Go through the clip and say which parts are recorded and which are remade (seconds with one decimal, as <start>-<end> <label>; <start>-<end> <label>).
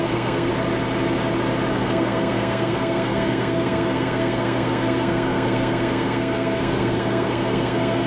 0.0-0.5 remade; 0.5-1.7 recorded; 1.7-8.1 remade